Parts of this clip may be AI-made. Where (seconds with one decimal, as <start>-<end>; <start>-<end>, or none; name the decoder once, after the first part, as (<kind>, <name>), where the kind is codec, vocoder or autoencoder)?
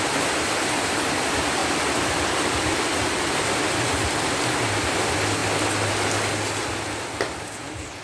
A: 1.6-4.4 (vocoder, BigVGAN v2)